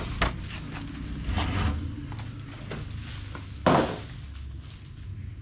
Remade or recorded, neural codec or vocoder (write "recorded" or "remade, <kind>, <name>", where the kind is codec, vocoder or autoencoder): recorded